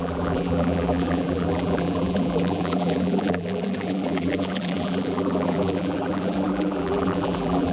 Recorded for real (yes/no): no